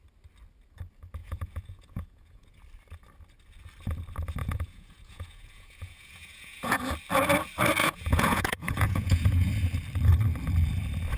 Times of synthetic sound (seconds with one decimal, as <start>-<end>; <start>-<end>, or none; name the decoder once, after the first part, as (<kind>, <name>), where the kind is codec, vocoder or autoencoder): 1.2-2.5 (vocoder, Vocos); 4.4-6.8; 7.8-9.5

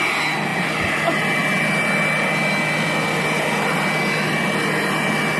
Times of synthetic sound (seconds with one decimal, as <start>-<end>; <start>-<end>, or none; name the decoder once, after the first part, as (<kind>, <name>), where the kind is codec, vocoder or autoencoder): none

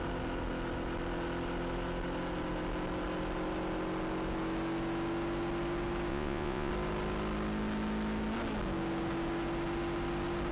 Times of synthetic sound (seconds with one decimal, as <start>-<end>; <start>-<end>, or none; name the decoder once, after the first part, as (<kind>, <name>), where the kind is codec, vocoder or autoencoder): 6.1-6.7 (vocoder, Vocos)